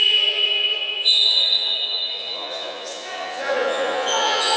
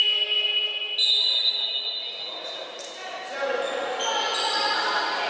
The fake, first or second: first